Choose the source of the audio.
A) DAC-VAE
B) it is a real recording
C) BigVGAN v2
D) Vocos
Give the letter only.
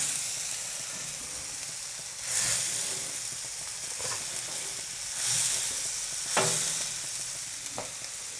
B